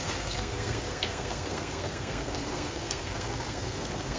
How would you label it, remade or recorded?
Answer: remade